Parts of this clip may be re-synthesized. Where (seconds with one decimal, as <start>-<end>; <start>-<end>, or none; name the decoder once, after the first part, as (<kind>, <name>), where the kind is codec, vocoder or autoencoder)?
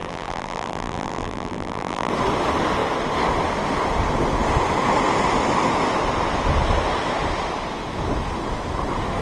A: 0.0-2.1 (vocoder, BigVGAN v2)